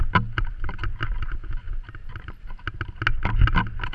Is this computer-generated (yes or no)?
no